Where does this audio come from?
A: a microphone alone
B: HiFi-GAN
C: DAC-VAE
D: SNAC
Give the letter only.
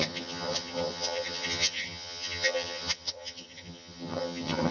B